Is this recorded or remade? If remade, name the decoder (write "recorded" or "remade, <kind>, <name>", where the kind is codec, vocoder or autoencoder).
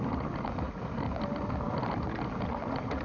recorded